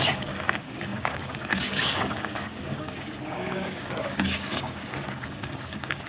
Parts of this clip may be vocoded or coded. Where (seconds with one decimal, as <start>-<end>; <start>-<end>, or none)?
0.0-6.1